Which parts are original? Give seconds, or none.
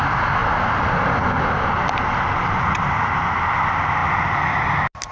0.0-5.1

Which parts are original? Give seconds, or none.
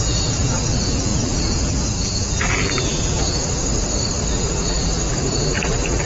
3.6-4.3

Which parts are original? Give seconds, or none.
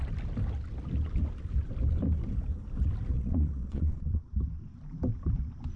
0.0-3.1; 4.3-5.8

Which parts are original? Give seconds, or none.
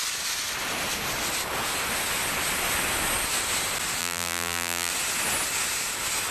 0.0-4.0; 4.9-6.3